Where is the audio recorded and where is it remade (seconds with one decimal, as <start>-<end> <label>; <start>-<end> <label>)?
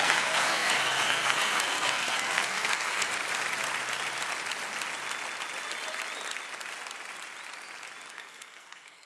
0.0-3.2 remade; 3.2-8.1 recorded; 8.1-9.1 remade